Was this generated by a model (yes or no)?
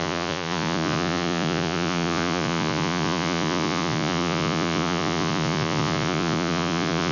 yes